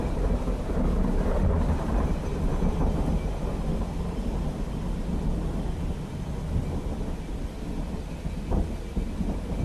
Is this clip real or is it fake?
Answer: real